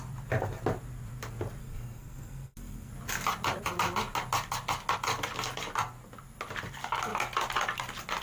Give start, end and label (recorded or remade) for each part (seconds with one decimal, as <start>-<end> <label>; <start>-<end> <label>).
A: 0.0-1.6 recorded; 1.6-2.9 remade; 2.9-8.2 recorded